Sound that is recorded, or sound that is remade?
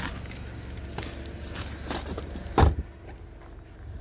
recorded